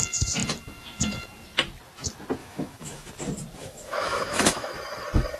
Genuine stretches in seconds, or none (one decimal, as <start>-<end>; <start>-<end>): 0.0-2.4; 3.1-3.6; 4.7-5.4